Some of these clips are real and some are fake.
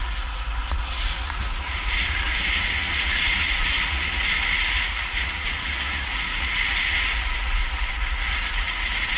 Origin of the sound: fake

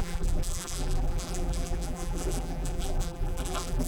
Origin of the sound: fake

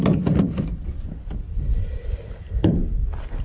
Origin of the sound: real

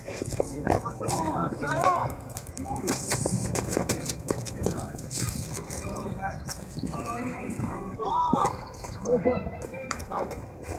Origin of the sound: fake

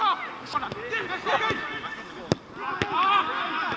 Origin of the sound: real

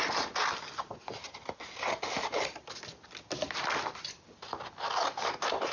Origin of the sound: real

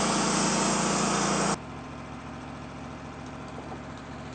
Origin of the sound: real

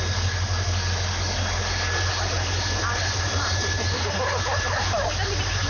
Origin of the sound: real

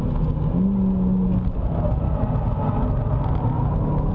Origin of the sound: real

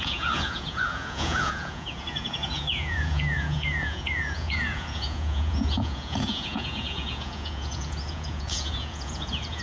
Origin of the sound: fake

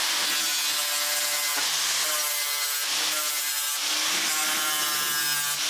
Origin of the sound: real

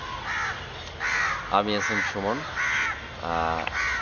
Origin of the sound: real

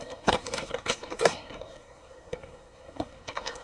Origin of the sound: fake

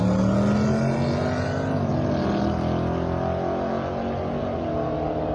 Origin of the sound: real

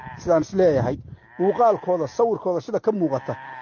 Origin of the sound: real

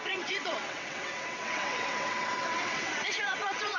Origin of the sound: fake